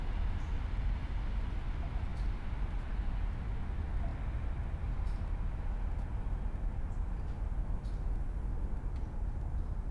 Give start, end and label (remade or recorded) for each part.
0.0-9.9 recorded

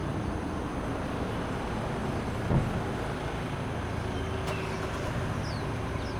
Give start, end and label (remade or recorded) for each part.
0.0-0.6 remade; 0.6-6.2 recorded

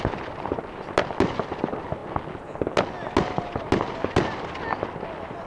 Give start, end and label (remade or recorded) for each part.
0.0-5.5 recorded

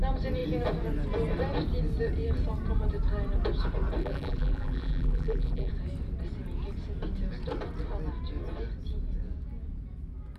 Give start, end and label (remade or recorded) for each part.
0.0-4.0 recorded; 4.0-5.7 remade; 5.7-10.4 recorded

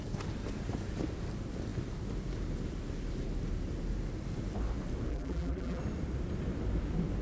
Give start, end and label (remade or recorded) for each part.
0.0-5.1 recorded; 5.1-5.8 remade; 5.8-7.2 recorded

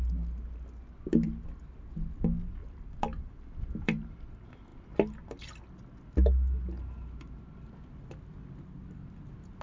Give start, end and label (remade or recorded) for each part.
0.0-2.6 recorded; 2.6-4.2 remade; 4.2-9.6 recorded